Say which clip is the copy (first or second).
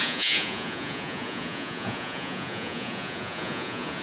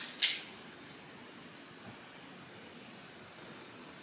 first